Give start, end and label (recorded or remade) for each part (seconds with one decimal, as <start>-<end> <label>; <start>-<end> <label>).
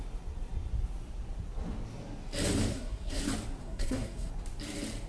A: 0.0-2.7 recorded; 2.7-3.2 remade; 3.2-3.6 recorded; 3.6-4.3 remade; 4.3-5.1 recorded